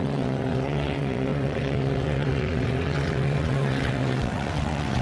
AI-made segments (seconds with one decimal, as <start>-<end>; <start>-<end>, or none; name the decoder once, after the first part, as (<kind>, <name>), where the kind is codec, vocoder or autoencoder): 0.0-5.0 (vocoder, WaveNeXt)